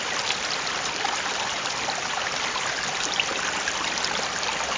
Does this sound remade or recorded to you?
recorded